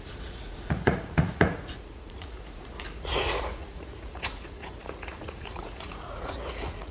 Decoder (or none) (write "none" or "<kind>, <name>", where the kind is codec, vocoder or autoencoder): vocoder, Vocos